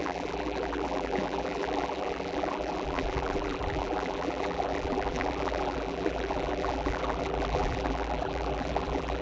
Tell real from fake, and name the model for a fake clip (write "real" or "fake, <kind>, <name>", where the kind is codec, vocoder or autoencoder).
fake, vocoder, BigVGAN v2